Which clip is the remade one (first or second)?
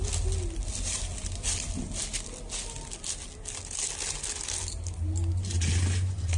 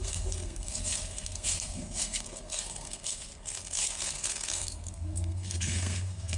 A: second